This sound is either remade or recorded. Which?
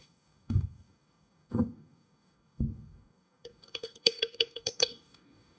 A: remade